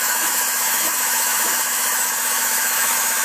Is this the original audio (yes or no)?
no